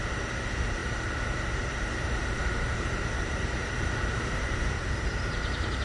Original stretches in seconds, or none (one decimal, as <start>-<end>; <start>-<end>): 0.0-0.8; 1.7-2.2